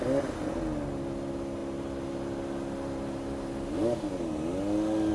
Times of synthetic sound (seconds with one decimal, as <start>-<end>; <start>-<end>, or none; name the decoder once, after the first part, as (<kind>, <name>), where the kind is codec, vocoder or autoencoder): none

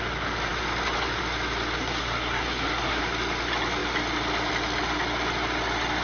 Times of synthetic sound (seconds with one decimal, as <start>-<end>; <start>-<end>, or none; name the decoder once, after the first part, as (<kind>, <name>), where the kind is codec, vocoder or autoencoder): 1.8-3.0 (codec, SNAC)